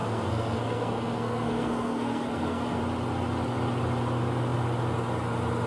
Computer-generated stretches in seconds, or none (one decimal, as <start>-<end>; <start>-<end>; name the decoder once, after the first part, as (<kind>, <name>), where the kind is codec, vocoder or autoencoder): 0.0-2.8 (codec, SNAC)